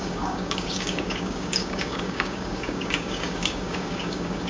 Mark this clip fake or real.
fake